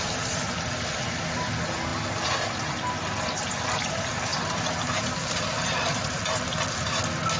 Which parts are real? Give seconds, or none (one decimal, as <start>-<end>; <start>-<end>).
0.0-4.3; 6.6-7.4